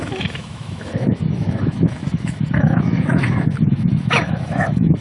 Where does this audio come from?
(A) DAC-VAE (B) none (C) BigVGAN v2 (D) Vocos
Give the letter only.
A